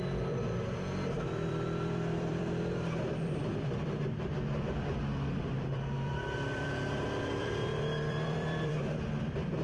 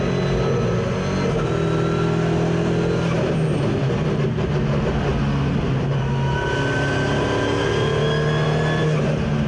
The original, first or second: second